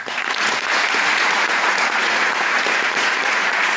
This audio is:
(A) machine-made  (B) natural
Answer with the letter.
A